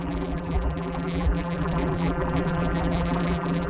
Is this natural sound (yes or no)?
no